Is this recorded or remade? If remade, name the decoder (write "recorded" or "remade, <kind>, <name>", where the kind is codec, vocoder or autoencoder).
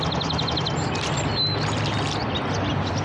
recorded